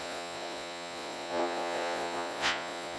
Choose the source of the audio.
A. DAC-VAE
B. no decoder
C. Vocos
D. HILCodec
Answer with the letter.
C